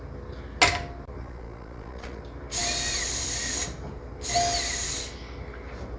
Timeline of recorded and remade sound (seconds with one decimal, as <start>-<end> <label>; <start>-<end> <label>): 0.0-1.2 recorded; 1.2-2.2 remade; 2.2-6.0 recorded